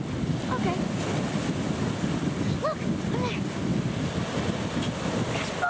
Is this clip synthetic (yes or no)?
no